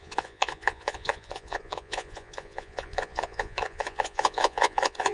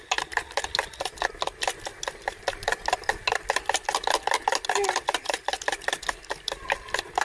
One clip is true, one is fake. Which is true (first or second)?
second